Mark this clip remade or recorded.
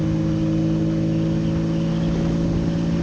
recorded